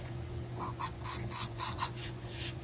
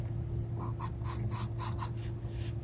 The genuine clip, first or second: second